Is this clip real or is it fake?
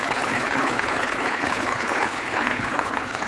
fake